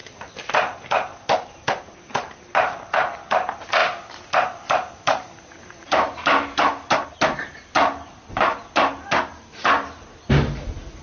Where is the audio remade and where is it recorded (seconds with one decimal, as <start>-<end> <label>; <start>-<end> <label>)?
0.0-0.5 remade; 0.5-1.1 recorded; 1.1-3.0 remade; 3.0-5.8 recorded; 5.8-7.6 remade; 7.6-11.0 recorded

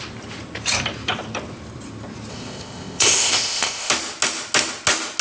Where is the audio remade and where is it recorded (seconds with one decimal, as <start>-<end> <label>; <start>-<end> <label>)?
0.0-2.3 recorded; 2.3-3.9 remade; 3.9-5.2 recorded

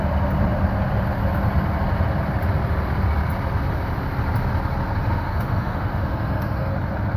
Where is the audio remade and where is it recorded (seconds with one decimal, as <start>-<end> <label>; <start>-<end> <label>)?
0.0-5.0 recorded; 5.0-6.7 remade; 6.7-7.2 recorded

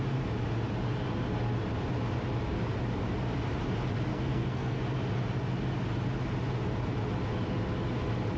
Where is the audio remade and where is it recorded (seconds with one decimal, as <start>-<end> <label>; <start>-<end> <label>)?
0.0-4.1 recorded; 4.1-4.8 remade; 4.8-8.4 recorded

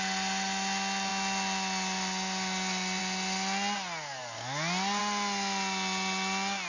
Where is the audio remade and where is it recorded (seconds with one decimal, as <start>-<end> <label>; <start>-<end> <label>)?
0.0-6.7 recorded

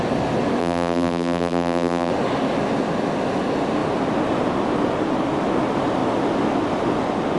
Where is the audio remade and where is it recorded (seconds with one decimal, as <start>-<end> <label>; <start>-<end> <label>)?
0.0-0.6 recorded; 0.6-2.1 remade; 2.1-7.4 recorded

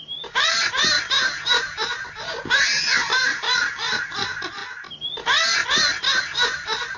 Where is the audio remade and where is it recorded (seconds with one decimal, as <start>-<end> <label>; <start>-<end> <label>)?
0.0-4.6 remade; 4.6-6.2 recorded; 6.2-7.0 remade